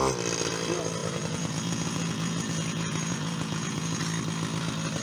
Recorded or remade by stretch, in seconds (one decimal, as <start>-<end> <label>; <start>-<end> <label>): 0.0-1.0 recorded; 1.0-4.0 remade; 4.0-5.0 recorded